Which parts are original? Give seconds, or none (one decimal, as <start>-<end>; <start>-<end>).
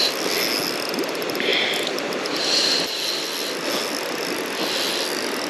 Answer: 0.0-5.5